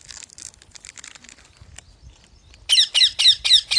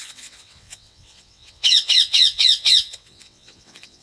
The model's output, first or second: second